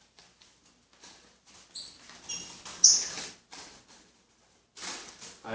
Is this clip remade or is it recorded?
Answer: recorded